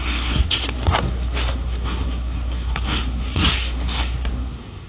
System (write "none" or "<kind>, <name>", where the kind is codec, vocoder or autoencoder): codec, SNAC